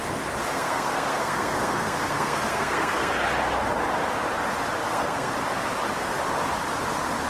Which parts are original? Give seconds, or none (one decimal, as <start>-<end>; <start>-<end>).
0.0-0.5; 3.1-4.8; 5.3-7.3